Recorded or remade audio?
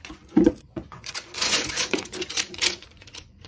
remade